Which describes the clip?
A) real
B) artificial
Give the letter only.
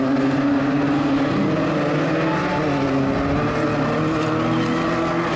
A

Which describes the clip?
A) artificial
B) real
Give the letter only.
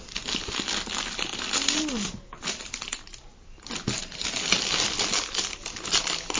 B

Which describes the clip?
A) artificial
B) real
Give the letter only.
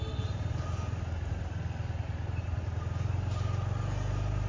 B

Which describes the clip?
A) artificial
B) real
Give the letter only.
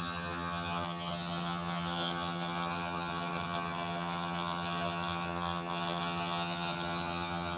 A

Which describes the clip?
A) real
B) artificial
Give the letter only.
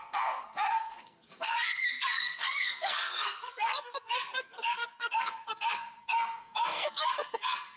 B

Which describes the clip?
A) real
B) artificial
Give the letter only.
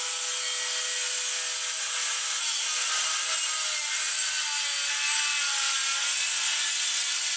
A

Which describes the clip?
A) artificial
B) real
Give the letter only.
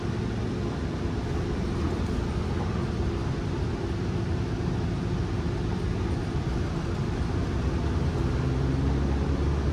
B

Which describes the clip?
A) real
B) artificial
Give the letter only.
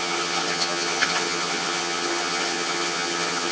B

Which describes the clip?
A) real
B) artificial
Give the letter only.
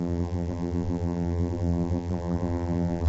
B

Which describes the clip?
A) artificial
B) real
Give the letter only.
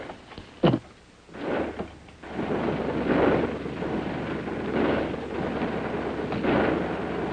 B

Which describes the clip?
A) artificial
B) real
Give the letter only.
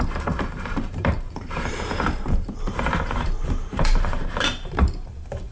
A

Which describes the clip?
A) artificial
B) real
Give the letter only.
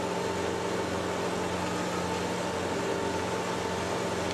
B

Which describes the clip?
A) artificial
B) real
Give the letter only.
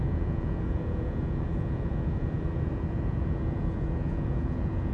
A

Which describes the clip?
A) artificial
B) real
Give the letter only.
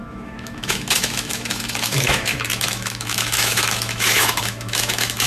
A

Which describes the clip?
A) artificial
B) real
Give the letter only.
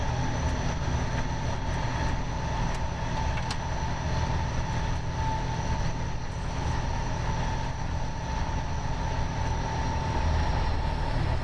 B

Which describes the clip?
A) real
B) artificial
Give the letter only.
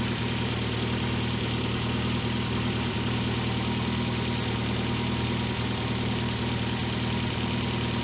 A